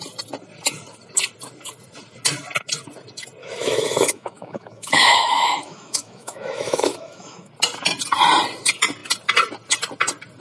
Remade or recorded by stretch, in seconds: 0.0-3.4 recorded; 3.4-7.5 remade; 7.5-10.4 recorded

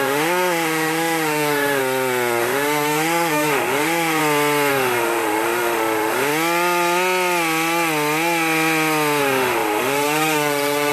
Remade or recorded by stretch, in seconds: 0.0-1.8 remade; 1.8-2.4 recorded; 2.4-4.2 remade; 4.2-4.7 recorded; 4.7-6.3 remade; 6.3-9.2 recorded; 9.2-10.9 remade

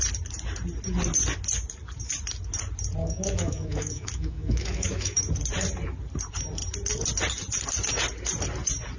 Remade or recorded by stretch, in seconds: 0.0-3.0 recorded; 3.0-5.2 remade; 5.2-9.0 recorded

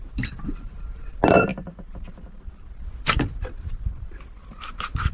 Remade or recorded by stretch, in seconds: 0.0-5.1 recorded

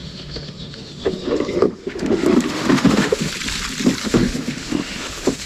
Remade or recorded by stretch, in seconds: 0.0-3.3 remade; 3.3-4.0 recorded; 4.0-5.5 remade

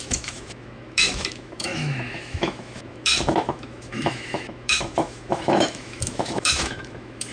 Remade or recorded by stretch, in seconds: 0.0-7.3 remade

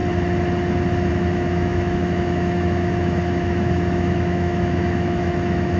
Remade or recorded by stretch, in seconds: 0.0-1.1 recorded; 1.1-5.8 remade